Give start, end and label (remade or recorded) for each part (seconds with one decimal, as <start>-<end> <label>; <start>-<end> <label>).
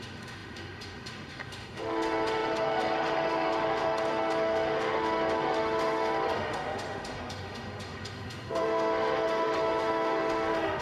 0.0-10.8 remade